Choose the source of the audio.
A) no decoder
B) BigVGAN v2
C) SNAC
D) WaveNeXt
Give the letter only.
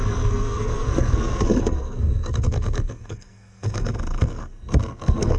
C